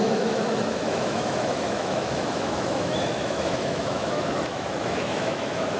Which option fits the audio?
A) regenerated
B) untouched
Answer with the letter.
A